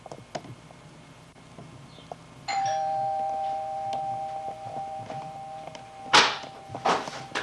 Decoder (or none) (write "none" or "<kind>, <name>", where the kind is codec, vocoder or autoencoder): none